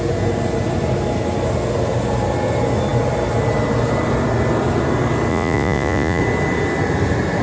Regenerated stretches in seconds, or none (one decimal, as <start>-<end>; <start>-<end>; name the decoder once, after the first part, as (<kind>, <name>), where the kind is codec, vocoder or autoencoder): 5.3-6.2 (vocoder, Vocos)